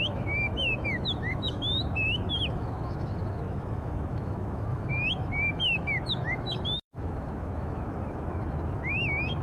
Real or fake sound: fake